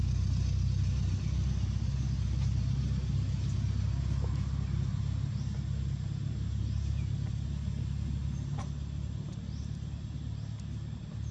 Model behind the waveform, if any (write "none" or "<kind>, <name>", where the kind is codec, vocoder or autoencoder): none